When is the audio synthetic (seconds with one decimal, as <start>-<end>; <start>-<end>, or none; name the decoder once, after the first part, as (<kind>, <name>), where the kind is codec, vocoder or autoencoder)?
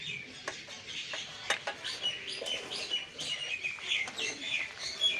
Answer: none